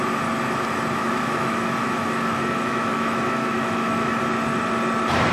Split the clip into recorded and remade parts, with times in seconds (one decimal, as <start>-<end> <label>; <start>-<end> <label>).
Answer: 0.0-1.0 recorded; 1.0-4.2 remade; 4.2-5.3 recorded